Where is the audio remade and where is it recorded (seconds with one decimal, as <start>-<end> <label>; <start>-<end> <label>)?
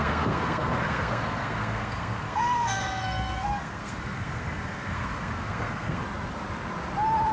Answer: 0.0-6.0 remade; 6.0-7.3 recorded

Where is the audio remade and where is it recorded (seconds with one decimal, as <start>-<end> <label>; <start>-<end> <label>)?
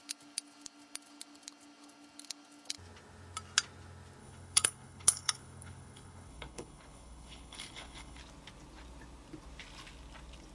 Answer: 0.0-4.2 recorded; 4.2-8.2 remade; 8.2-10.5 recorded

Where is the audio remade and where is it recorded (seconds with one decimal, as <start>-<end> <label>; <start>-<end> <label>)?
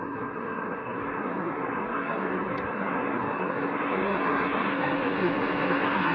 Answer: 0.0-6.1 remade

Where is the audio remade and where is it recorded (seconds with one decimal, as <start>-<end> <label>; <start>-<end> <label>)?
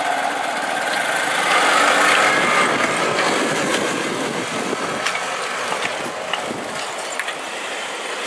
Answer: 0.0-8.3 recorded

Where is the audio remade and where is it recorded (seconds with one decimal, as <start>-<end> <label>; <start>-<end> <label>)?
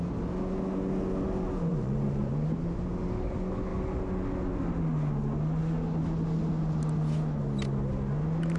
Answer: 0.0-1.7 recorded; 1.7-2.3 remade; 2.3-8.6 recorded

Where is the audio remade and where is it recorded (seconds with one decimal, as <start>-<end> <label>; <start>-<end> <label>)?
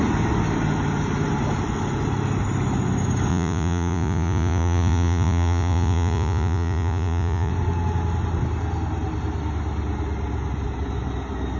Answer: 0.0-3.3 recorded; 3.3-7.5 remade; 7.5-11.6 recorded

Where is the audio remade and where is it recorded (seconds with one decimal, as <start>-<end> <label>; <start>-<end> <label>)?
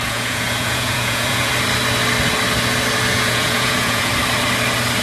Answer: 0.0-1.5 remade; 1.5-3.1 recorded; 3.1-4.1 remade; 4.1-5.0 recorded